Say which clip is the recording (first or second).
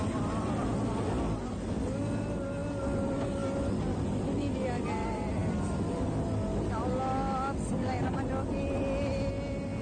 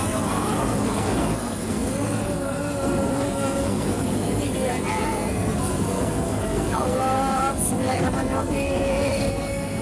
first